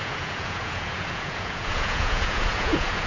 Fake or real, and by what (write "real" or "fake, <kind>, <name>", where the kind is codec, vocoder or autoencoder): fake, vocoder, Vocos